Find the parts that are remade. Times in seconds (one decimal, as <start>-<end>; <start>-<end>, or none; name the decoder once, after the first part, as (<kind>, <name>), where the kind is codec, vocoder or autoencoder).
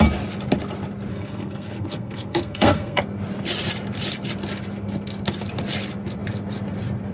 1.1-3.0 (codec, SNAC)